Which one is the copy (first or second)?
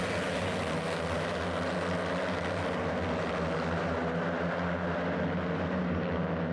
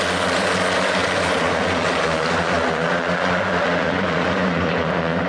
second